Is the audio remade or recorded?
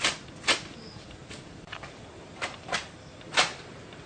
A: recorded